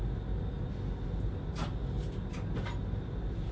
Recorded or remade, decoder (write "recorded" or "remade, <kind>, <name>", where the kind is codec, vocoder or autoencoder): recorded